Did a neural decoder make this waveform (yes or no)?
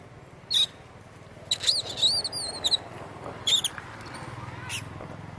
no